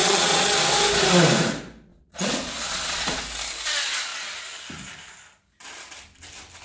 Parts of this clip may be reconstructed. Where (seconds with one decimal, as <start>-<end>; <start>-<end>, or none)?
0.0-0.6; 1.9-3.2